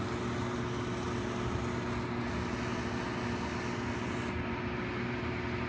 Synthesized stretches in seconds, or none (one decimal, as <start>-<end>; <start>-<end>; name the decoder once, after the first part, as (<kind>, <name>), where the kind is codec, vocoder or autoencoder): none